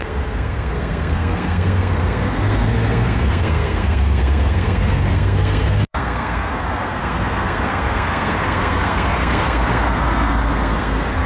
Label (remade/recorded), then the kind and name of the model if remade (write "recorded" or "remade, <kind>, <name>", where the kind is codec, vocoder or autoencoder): remade, codec, SNAC